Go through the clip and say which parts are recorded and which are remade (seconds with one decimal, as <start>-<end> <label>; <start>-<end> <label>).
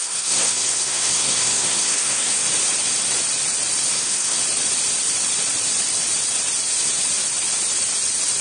0.0-2.4 remade; 2.4-3.9 recorded; 3.9-4.4 remade; 4.4-8.4 recorded